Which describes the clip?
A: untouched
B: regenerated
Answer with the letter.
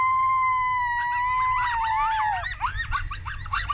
A